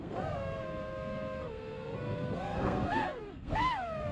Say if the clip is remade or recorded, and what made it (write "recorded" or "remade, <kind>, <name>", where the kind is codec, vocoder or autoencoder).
remade, codec, SNAC